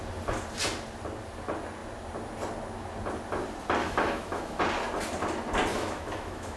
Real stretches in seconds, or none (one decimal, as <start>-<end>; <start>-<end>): 0.0-3.8; 4.6-5.7